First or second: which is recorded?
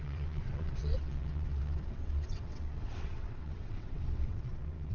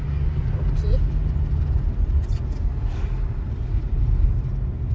second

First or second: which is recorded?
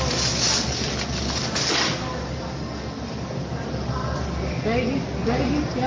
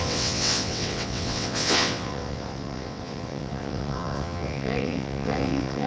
first